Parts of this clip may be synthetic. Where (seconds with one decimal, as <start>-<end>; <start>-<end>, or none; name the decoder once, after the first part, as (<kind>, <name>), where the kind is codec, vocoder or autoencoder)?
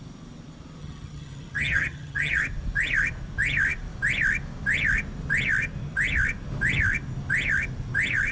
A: 0.8-2.4 (vocoder, HiFi-GAN)